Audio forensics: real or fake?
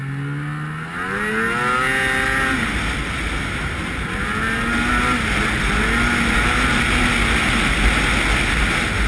real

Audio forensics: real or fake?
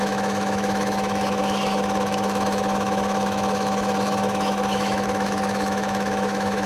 fake